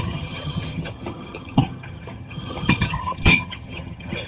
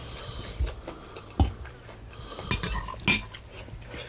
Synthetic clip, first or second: first